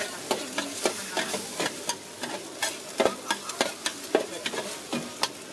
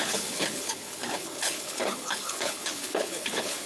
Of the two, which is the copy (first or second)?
second